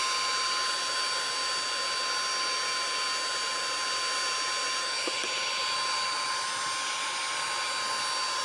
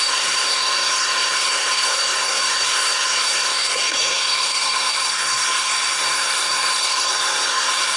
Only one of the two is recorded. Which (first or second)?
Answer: first